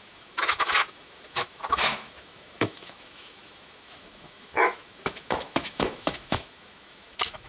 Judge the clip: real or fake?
fake